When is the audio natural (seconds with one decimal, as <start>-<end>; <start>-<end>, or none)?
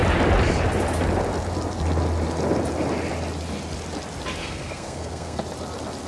0.0-4.4; 5.4-6.1